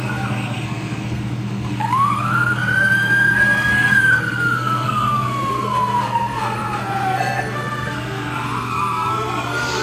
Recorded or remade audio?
remade